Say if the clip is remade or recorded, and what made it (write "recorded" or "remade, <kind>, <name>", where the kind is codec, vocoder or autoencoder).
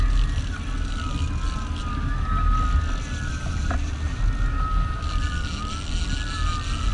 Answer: recorded